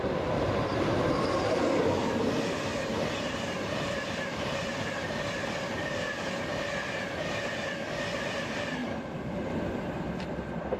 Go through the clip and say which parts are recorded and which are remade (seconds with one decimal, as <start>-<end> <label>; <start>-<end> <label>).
0.0-2.7 recorded; 2.7-5.1 remade; 5.1-10.8 recorded